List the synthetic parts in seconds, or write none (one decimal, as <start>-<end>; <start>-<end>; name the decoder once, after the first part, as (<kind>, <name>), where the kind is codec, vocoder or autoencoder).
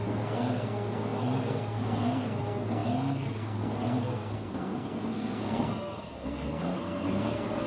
0.0-7.7 (codec, SNAC)